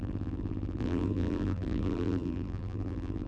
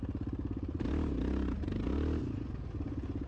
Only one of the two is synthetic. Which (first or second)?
first